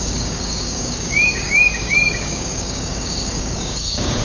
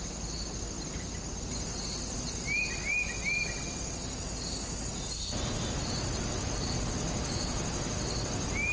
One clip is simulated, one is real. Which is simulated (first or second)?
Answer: first